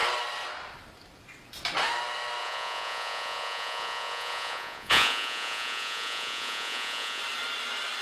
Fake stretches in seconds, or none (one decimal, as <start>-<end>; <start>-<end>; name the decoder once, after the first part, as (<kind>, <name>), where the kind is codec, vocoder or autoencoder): 2.4-7.2 (vocoder, Vocos)